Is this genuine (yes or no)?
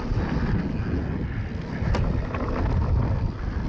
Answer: yes